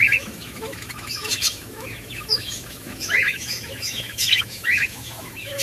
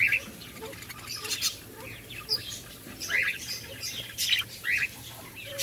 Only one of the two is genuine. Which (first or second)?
second